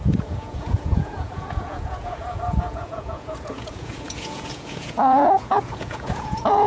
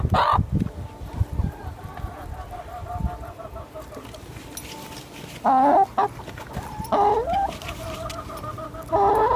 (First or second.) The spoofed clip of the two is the first